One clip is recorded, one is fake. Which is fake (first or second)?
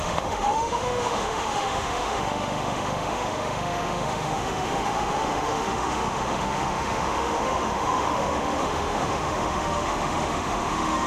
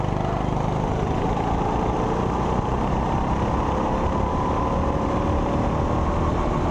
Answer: first